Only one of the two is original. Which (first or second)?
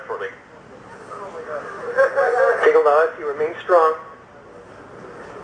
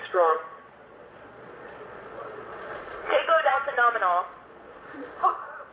first